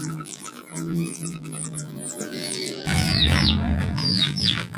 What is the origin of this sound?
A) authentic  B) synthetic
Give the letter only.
B